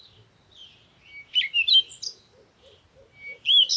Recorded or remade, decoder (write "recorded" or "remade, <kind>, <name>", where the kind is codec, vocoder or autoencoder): recorded